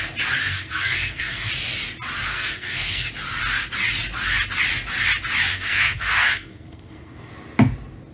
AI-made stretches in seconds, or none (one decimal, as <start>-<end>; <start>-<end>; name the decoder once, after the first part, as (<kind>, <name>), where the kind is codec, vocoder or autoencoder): 0.4-1.5 (codec, SNAC); 2.3-3.1; 5.5-7.3